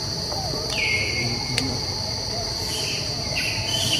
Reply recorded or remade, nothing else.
remade